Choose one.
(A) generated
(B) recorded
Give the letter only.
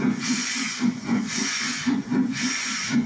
A